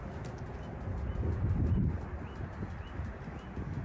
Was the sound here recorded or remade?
recorded